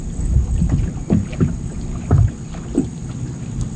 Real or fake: real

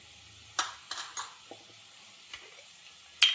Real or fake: real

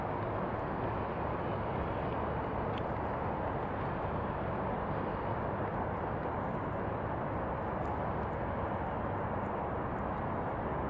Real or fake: real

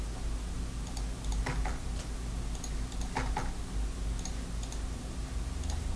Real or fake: real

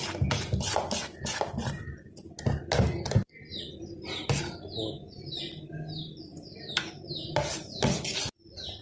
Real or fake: real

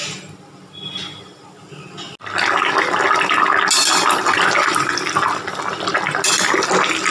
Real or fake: real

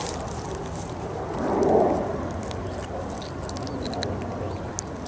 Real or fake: real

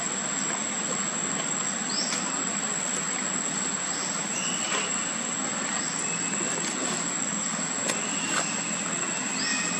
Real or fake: real